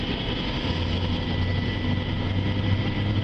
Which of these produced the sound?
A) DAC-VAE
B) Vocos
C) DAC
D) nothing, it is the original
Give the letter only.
D